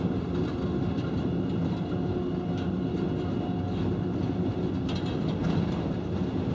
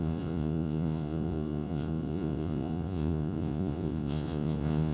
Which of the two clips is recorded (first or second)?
first